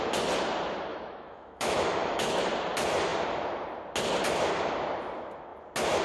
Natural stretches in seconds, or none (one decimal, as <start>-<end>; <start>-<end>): 0.0-0.9; 2.5-6.0